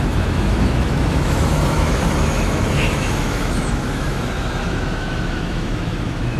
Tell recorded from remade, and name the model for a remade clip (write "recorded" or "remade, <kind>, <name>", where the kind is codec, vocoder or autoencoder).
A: remade, autoencoder, DAC-VAE